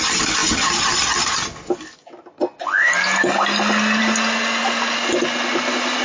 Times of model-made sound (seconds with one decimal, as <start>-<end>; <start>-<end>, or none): none